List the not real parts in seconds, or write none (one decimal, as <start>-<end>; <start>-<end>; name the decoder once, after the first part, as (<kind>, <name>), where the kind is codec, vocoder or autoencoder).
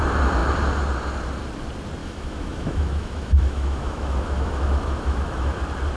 2.0-5.6 (autoencoder, DAC-VAE)